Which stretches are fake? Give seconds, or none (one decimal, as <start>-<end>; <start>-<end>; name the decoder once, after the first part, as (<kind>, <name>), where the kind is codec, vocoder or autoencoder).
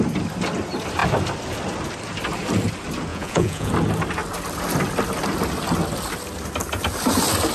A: 3.1-3.7 (vocoder, Vocos)